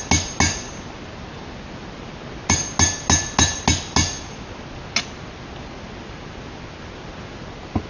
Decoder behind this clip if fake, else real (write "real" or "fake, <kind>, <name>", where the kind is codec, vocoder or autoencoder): real